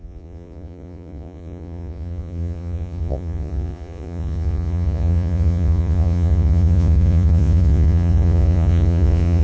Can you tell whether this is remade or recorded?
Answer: remade